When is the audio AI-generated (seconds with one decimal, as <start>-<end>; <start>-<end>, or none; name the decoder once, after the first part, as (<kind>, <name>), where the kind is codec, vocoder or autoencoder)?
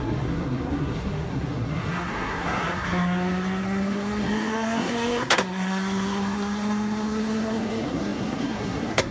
0.0-9.1 (codec, SNAC)